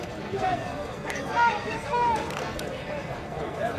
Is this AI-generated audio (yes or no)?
yes